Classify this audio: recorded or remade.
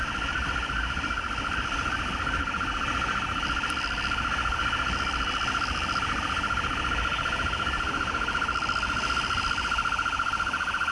recorded